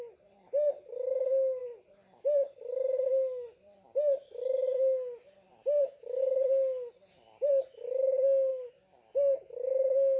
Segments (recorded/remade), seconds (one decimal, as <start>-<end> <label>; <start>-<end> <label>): 0.0-10.2 recorded